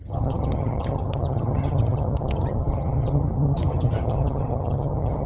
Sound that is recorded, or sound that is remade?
remade